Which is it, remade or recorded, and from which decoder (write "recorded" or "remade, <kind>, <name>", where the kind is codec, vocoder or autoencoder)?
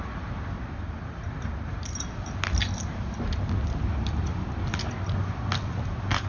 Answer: recorded